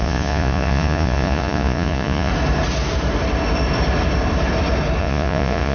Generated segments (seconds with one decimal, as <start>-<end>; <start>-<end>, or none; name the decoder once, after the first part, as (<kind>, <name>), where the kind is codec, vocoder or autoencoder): 0.0-2.3 (vocoder, Vocos); 5.0-5.7